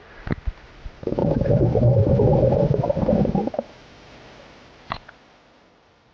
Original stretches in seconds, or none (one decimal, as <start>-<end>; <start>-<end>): 0.0-6.1